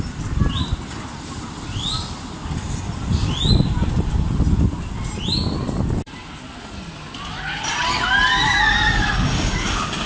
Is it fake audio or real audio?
real